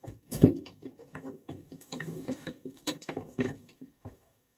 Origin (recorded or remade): remade